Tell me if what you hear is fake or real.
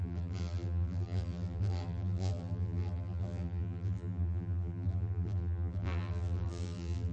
fake